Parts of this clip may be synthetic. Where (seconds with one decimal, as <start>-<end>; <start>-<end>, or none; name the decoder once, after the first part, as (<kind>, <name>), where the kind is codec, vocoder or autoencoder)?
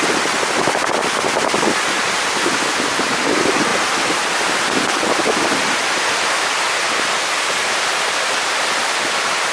none